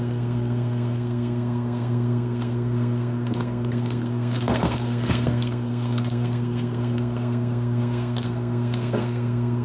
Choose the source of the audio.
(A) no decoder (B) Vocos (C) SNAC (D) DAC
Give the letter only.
C